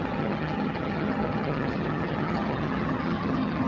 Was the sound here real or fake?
fake